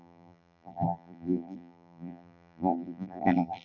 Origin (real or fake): fake